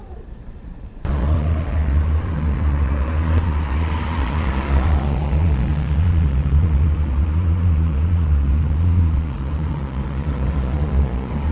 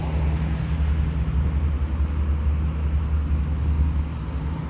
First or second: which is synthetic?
first